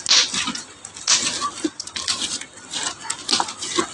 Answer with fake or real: real